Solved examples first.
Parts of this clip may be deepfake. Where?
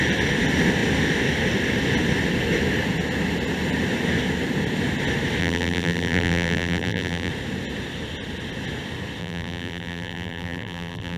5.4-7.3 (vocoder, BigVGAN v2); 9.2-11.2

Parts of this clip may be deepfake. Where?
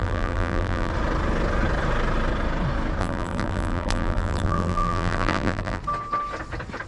0.0-0.9 (vocoder, BigVGAN v2); 3.0-5.8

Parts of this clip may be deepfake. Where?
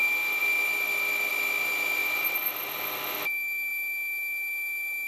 none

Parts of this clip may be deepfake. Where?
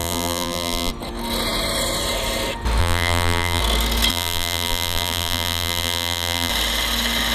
0.0-0.9 (vocoder, BigVGAN v2); 2.8-3.6; 4.1-6.5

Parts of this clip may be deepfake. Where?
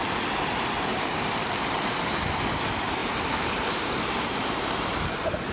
0.9-1.9 (vocoder, BigVGAN v2); 3.0-5.1